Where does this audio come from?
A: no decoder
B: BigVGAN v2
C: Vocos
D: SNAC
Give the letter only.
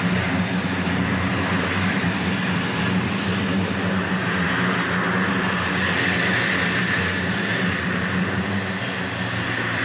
A